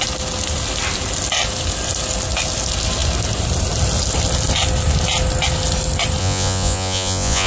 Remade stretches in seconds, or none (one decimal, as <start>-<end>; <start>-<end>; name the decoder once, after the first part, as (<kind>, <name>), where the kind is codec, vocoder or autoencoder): 6.2-7.5 (vocoder, Vocos)